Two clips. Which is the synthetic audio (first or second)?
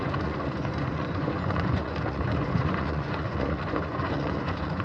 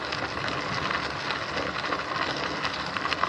first